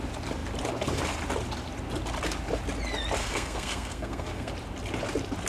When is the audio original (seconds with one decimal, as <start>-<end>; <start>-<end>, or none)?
0.0-3.2; 4.5-5.5